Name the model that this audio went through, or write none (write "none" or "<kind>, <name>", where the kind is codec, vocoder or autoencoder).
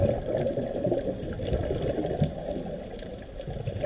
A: none